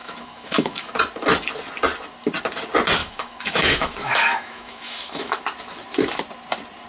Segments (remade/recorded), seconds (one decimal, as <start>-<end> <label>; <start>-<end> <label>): 0.0-0.9 remade; 0.9-3.0 recorded; 3.0-5.4 remade; 5.4-6.9 recorded

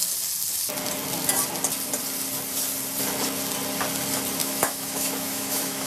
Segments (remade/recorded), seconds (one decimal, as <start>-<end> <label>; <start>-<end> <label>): 0.0-4.4 recorded; 4.4-5.9 remade

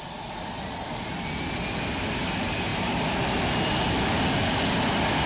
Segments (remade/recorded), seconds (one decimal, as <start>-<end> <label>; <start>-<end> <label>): 0.0-5.3 recorded